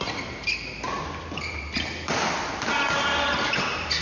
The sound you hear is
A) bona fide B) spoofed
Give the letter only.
A